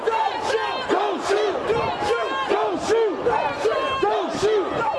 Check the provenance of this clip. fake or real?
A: real